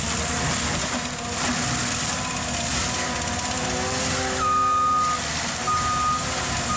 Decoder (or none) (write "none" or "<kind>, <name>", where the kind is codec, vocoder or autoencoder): none